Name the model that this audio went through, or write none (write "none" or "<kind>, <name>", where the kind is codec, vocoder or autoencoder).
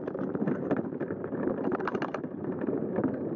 none